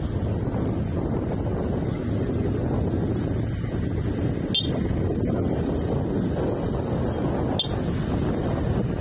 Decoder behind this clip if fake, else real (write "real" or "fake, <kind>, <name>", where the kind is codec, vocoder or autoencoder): real